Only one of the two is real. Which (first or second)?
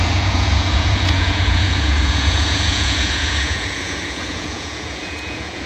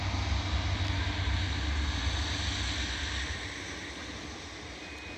second